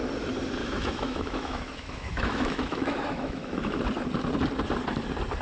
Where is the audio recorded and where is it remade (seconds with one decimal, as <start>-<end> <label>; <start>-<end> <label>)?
0.0-0.6 recorded; 0.6-3.8 remade; 3.8-5.4 recorded